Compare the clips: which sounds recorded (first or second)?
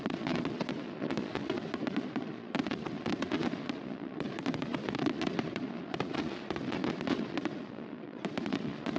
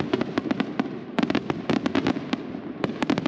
second